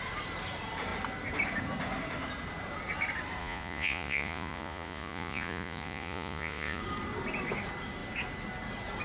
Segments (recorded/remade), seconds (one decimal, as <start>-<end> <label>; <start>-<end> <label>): 0.0-3.4 recorded; 3.4-6.8 remade; 6.8-9.0 recorded